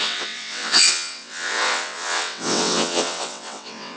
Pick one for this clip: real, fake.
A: fake